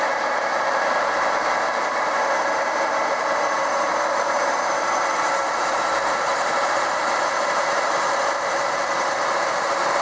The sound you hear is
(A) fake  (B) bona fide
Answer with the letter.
A